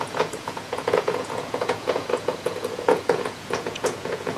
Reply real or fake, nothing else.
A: fake